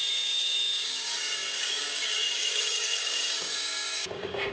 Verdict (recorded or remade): remade